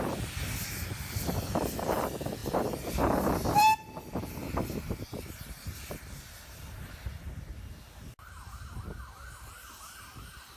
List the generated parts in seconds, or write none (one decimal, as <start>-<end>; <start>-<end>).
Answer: 4.4-7.3